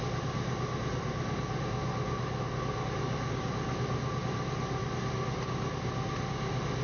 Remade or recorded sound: recorded